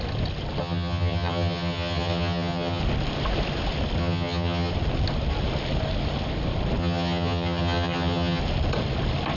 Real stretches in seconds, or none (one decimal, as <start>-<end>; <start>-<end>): 0.0-0.6; 2.8-4.0; 4.7-6.8; 8.4-9.4